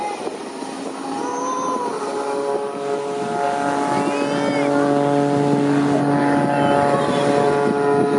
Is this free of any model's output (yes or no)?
yes